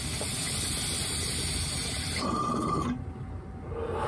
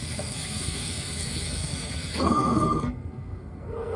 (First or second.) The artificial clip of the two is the second